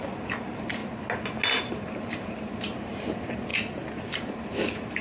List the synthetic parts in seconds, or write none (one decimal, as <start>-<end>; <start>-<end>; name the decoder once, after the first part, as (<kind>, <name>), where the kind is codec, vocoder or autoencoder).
0.0-0.8 (vocoder, BigVGAN v2); 1.6-3.5; 4.0-5.0